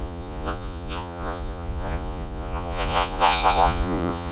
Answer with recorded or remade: remade